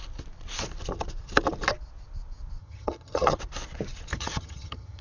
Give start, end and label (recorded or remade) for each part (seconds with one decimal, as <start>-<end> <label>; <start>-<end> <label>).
0.0-2.6 recorded; 2.6-3.4 remade; 3.4-4.1 recorded; 4.1-5.0 remade